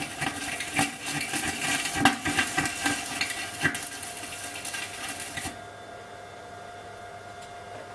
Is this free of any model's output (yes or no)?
yes